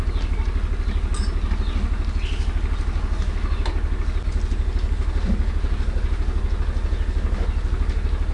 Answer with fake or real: real